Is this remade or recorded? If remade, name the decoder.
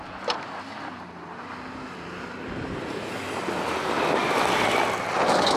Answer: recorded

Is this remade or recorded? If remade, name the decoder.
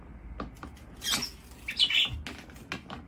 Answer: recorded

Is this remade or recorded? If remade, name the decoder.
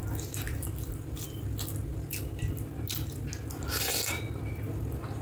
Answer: recorded